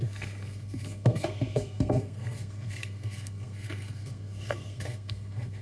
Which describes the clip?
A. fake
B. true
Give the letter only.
A